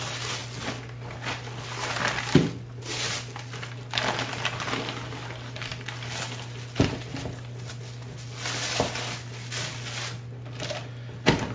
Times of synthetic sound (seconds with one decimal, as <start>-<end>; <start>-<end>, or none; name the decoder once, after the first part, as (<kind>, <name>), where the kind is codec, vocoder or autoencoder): none